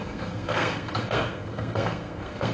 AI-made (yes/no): yes